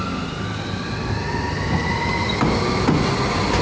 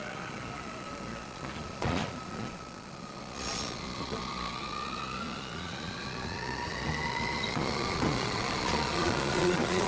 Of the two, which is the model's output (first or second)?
second